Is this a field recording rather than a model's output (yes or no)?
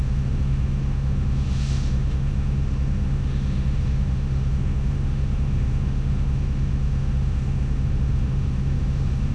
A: no